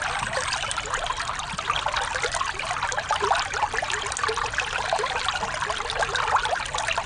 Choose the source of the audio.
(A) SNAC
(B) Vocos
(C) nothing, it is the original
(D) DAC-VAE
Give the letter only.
C